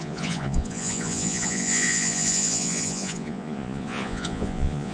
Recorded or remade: remade